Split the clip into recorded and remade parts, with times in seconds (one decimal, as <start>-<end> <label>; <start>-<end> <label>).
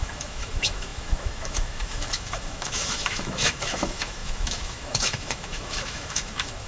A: 0.0-6.7 remade